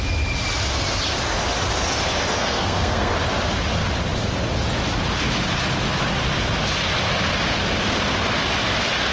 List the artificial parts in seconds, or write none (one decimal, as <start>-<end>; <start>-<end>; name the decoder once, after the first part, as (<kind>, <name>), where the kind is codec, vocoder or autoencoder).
2.4-3.1 (codec, SNAC)